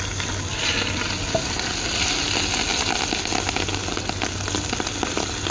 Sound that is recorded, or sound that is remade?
recorded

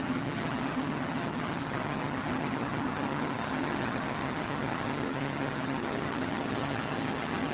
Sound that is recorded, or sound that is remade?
remade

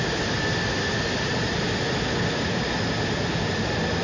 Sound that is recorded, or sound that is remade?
recorded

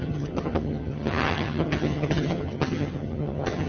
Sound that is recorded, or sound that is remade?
remade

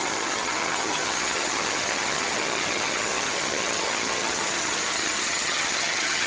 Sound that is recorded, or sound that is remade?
remade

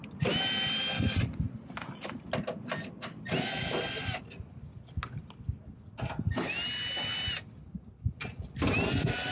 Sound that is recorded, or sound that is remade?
recorded